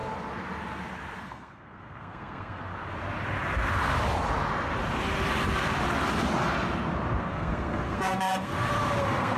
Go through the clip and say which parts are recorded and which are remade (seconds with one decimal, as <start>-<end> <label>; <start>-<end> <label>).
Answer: 0.0-1.2 recorded; 1.2-2.7 remade; 2.7-7.2 recorded; 7.2-8.5 remade; 8.5-9.0 recorded; 9.0-9.4 remade